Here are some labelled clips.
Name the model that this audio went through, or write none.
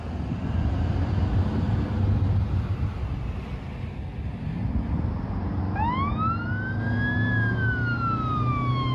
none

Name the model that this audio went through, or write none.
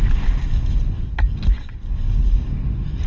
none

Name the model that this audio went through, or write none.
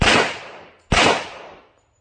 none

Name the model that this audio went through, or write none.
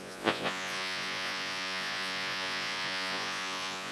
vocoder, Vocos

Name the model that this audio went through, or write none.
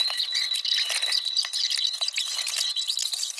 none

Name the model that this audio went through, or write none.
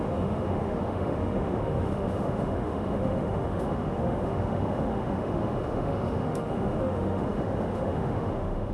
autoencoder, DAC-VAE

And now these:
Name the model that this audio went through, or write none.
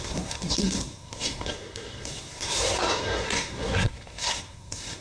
codec, SNAC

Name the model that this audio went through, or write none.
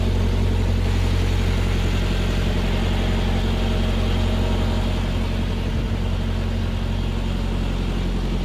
none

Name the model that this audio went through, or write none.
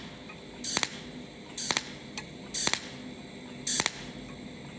none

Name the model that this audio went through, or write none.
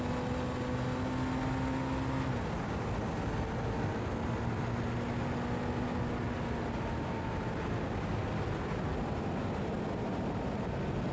none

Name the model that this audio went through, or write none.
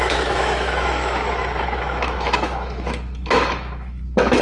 autoencoder, DAC-VAE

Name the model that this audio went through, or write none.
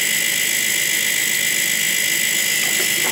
none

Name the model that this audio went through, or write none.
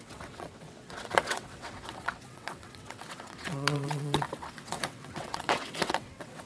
vocoder, WaveNeXt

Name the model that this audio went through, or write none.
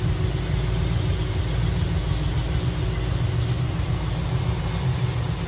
none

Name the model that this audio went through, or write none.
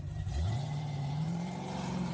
vocoder, BigVGAN v2